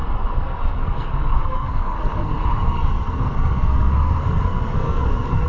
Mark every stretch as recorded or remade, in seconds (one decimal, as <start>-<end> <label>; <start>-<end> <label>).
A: 0.0-5.5 remade